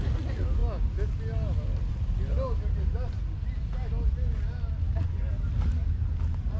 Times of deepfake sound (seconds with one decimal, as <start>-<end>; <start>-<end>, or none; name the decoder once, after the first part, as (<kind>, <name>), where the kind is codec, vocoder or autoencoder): none